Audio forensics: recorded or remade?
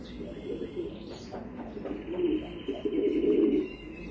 recorded